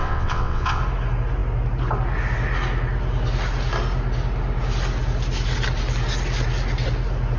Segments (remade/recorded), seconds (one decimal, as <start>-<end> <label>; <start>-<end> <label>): 0.0-0.8 remade; 0.8-7.4 recorded